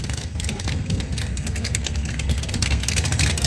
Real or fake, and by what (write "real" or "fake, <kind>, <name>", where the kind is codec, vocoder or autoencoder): fake, codec, SNAC